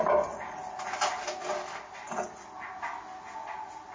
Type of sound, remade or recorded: recorded